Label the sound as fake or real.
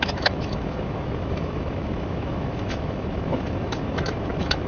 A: fake